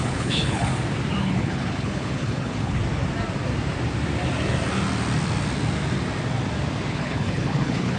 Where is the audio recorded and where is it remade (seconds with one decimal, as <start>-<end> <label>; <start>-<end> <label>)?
0.0-0.7 remade; 0.7-1.2 recorded; 1.2-2.8 remade; 2.8-6.9 recorded; 6.9-8.0 remade